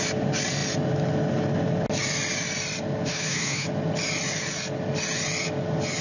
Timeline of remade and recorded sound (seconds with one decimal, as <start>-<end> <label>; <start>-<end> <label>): 0.0-3.1 recorded; 3.1-3.7 remade; 3.7-6.0 recorded